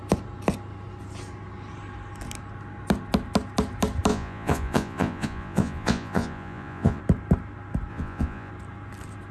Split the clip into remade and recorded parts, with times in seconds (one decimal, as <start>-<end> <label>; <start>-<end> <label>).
0.0-4.1 recorded; 4.1-7.0 remade; 7.0-7.9 recorded; 7.9-8.5 remade; 8.5-9.3 recorded